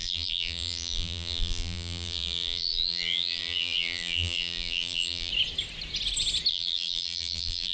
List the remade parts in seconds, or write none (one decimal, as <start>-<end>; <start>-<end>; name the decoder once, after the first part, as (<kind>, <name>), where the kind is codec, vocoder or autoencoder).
0.0-5.3 (vocoder, BigVGAN v2); 6.5-7.7

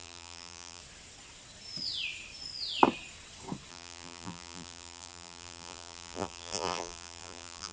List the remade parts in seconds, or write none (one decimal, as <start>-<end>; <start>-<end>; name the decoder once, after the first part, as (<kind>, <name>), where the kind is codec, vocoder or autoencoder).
0.0-0.8 (vocoder, BigVGAN v2); 3.7-7.7

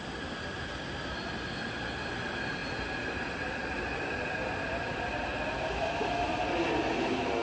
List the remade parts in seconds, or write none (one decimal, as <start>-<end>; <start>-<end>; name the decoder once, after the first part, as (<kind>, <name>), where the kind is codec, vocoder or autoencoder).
none

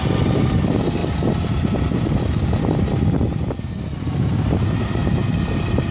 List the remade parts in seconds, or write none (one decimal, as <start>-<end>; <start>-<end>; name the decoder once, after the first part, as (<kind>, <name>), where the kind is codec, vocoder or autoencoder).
1.0-3.5 (vocoder, BigVGAN v2); 5.2-5.9

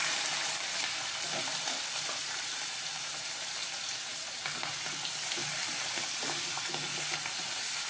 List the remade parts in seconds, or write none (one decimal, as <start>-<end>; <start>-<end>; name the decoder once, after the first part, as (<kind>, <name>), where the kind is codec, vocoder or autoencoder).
2.2-3.1 (vocoder, BigVGAN v2)

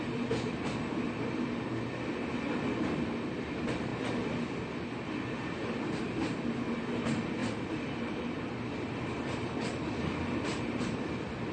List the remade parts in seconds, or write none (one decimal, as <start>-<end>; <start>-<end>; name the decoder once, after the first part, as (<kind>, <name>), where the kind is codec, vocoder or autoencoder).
7.4-11.0 (vocoder, BigVGAN v2)